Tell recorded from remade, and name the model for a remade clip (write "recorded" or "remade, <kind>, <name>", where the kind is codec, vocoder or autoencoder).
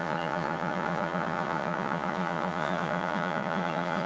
remade, vocoder, Vocos